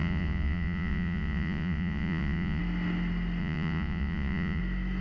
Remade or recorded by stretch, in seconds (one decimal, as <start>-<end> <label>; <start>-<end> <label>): 0.0-2.6 remade; 2.6-3.4 recorded; 3.4-4.6 remade; 4.6-5.0 recorded